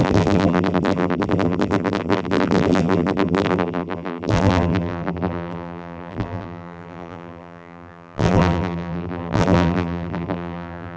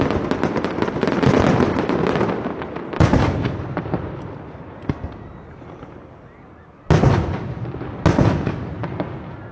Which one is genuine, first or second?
second